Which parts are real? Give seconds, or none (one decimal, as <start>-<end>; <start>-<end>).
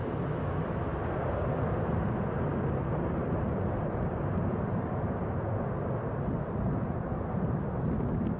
0.0-2.5; 3.9-8.4